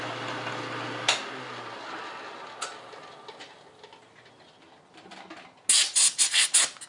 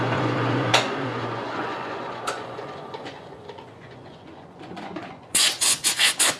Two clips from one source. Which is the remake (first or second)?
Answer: second